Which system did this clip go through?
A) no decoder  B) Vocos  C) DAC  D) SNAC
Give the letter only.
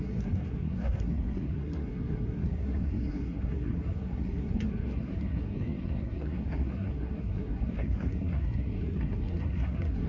D